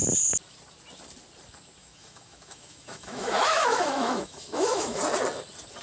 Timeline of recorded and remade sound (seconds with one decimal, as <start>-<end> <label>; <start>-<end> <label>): 0.0-1.8 recorded; 1.8-5.0 remade; 5.0-5.8 recorded